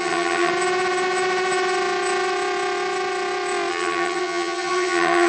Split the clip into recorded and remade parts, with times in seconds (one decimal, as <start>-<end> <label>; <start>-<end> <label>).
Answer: 0.0-0.5 remade; 0.5-3.7 recorded; 3.7-5.3 remade